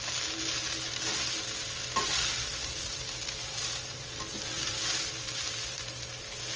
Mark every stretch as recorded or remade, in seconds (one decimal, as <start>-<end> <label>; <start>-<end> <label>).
0.0-2.5 recorded; 2.5-6.1 remade; 6.1-6.6 recorded